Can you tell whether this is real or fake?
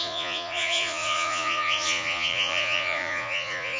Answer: fake